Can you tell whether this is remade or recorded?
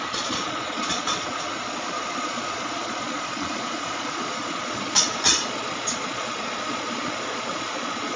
remade